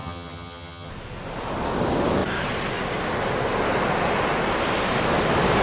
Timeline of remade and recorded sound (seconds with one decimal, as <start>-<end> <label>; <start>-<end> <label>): 0.0-0.9 remade; 0.9-5.6 recorded